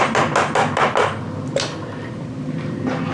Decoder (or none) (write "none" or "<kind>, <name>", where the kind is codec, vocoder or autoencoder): none